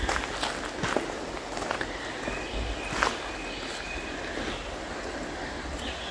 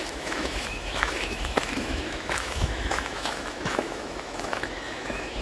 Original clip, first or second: first